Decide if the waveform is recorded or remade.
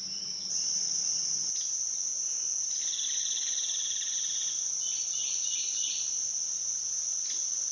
recorded